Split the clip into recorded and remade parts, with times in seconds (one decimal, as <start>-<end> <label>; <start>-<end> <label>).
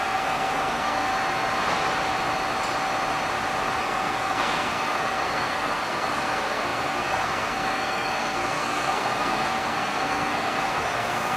0.0-1.1 remade; 1.1-3.8 recorded; 3.8-11.4 remade